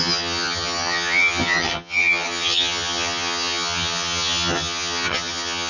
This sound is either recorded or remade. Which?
remade